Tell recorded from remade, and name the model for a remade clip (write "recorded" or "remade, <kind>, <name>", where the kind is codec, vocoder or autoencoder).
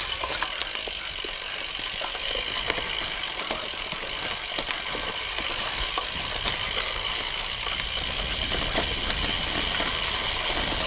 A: recorded